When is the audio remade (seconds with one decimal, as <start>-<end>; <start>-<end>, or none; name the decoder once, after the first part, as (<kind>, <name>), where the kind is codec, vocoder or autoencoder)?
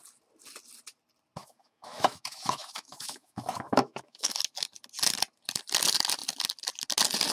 1.4-4.3 (autoencoder, DAC-VAE)